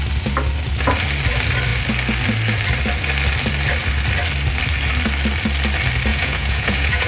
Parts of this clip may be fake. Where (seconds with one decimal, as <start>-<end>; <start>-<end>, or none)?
6.1-7.1